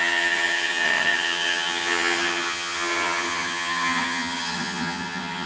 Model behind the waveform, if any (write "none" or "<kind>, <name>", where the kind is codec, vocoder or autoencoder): vocoder, HiFi-GAN